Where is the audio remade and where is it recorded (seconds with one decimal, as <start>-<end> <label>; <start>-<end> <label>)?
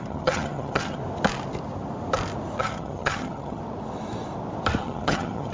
0.0-1.0 remade; 1.0-2.6 recorded; 2.6-3.6 remade; 3.6-4.8 recorded; 4.8-5.5 remade